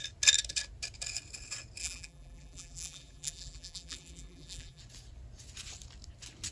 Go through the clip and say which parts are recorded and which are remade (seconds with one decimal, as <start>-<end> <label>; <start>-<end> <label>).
0.0-1.8 recorded; 1.8-4.8 remade; 4.8-6.5 recorded